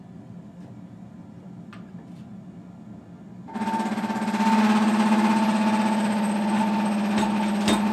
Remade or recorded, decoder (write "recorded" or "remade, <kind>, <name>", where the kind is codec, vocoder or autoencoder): recorded